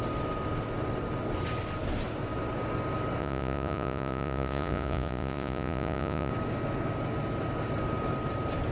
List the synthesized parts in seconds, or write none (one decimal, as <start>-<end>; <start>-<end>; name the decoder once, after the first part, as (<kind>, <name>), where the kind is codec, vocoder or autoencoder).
3.2-6.3 (vocoder, Vocos)